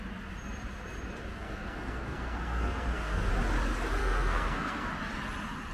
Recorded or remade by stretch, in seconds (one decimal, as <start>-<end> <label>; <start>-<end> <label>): 0.0-1.3 recorded; 1.3-3.3 remade; 3.3-4.0 recorded; 4.0-4.9 remade; 4.9-5.7 recorded